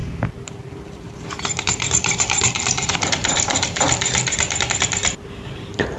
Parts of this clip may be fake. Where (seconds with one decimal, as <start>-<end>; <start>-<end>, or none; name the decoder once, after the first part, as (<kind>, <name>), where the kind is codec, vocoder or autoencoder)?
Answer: 0.0-6.0 (vocoder, BigVGAN v2)